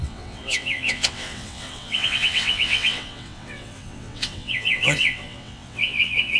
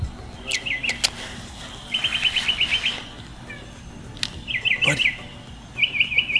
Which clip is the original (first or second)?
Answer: second